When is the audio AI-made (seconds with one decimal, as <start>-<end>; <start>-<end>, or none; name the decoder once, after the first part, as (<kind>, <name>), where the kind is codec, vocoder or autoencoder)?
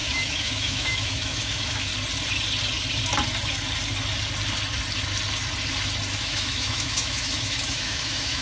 0.0-1.9 (autoencoder, DAC-VAE); 6.2-8.4